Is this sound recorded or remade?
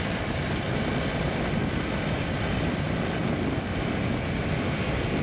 recorded